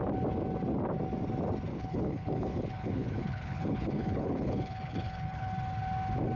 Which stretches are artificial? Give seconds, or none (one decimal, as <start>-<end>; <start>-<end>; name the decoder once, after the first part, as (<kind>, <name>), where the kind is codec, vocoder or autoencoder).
1.7-5.5 (codec, HILCodec)